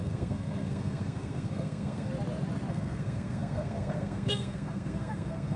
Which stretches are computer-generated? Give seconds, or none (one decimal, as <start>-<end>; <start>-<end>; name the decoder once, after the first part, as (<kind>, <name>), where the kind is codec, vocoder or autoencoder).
0.0-2.1 (codec, SNAC); 2.7-5.6

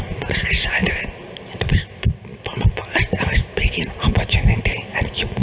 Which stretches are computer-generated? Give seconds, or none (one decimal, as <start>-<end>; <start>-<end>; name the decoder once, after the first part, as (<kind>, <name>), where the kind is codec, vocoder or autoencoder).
none

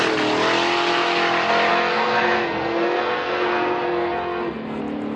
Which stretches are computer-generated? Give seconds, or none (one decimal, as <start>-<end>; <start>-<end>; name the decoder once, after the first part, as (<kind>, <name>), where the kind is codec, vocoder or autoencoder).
1.7-4.8 (codec, SNAC)

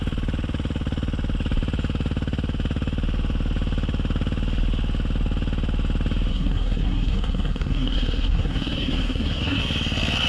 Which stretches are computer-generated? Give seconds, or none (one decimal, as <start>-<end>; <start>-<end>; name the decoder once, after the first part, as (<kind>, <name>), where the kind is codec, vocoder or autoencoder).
6.3-9.6 (codec, SNAC)

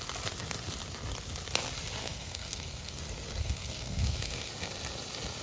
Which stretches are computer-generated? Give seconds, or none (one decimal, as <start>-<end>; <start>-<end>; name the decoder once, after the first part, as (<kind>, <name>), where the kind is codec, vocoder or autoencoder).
2.0-3.0 (codec, SNAC); 3.4-4.5

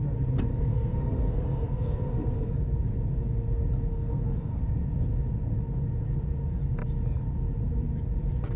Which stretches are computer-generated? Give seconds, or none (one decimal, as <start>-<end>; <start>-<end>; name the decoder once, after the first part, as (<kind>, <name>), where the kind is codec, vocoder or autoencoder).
0.5-2.5 (codec, SNAC); 3.9-4.6

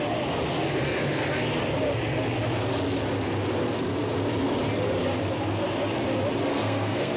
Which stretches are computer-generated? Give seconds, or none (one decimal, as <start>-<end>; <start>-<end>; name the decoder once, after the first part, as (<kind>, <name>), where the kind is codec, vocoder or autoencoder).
6.5-7.2 (codec, SNAC)

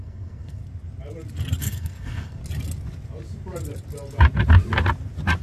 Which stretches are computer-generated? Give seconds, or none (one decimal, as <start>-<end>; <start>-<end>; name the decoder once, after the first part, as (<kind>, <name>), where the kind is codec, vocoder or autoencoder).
0.0-0.6 (codec, SNAC); 1.6-2.4